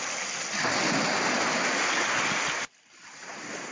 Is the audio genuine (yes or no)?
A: yes